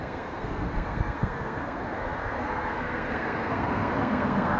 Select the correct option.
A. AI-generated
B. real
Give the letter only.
A